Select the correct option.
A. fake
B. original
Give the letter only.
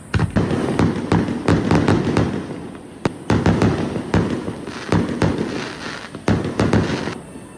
B